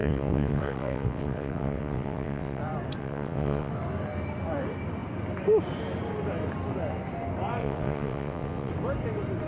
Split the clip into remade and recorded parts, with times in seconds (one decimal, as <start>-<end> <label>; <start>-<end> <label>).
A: 0.0-2.6 remade; 2.6-3.0 recorded; 3.0-3.7 remade; 3.7-7.6 recorded; 7.6-8.7 remade; 8.7-9.5 recorded